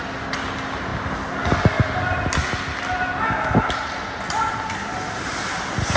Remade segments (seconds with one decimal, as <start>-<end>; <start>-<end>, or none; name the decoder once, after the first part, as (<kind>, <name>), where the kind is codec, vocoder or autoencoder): none